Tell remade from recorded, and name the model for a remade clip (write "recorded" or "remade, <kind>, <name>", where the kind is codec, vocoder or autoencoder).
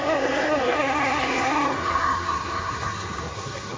remade, codec, SNAC